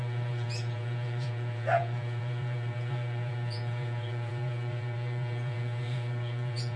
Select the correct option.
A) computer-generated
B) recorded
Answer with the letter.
A